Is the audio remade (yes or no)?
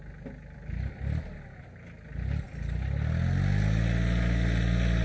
no